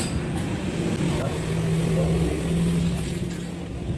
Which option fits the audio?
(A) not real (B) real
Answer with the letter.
B